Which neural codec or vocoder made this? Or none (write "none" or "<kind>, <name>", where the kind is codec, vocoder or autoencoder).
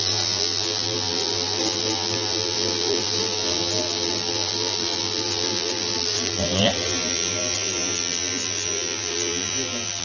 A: vocoder, BigVGAN v2